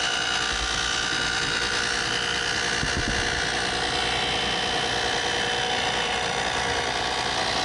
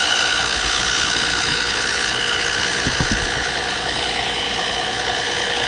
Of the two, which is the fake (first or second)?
second